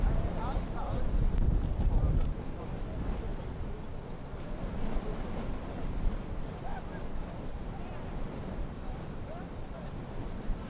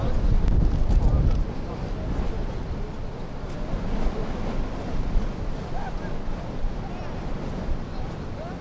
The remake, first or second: first